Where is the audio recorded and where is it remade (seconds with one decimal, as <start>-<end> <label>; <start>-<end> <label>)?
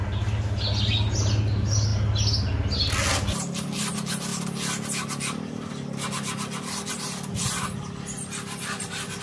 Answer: 0.0-9.2 recorded